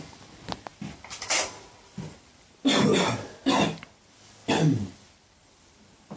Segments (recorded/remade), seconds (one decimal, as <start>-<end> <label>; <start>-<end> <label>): 0.0-0.7 recorded; 0.7-2.5 remade; 2.5-4.4 recorded; 4.4-6.2 remade